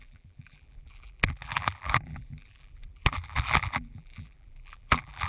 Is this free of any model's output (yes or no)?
no